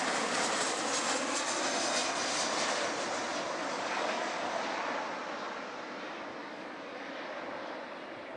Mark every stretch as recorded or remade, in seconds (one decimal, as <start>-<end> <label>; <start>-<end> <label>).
0.0-3.6 recorded; 3.6-4.6 remade; 4.6-6.4 recorded; 6.4-7.1 remade; 7.1-8.4 recorded